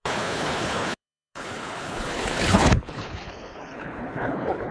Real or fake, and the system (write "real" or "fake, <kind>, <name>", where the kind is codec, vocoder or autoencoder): fake, codec, HILCodec